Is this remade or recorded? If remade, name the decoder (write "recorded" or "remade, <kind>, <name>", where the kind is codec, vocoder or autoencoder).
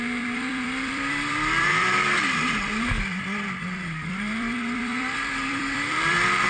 remade, vocoder, BigVGAN v2